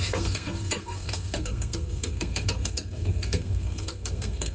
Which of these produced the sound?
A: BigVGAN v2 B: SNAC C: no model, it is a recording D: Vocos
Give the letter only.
B